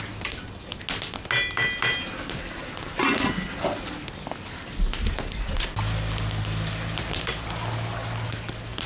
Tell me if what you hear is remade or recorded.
recorded